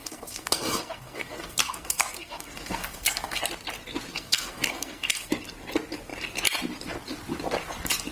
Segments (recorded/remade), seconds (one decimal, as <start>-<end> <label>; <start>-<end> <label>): 0.0-3.4 remade; 3.4-4.1 recorded; 4.1-5.3 remade; 5.3-8.1 recorded

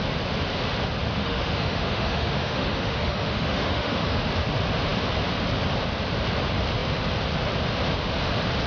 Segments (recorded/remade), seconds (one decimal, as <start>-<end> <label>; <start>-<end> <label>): 0.0-1.2 recorded; 1.2-4.3 remade; 4.3-8.7 recorded